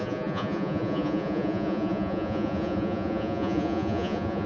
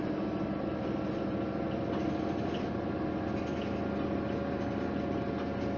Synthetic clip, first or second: first